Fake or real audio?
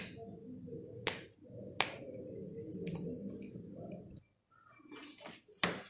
real